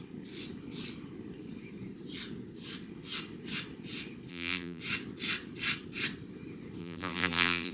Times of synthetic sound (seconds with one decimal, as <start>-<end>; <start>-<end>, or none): 4.3-4.8; 6.8-7.7